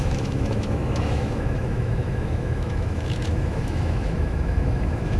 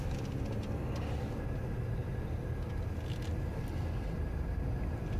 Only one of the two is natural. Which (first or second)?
second